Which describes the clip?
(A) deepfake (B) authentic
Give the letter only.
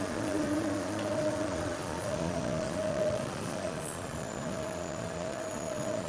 A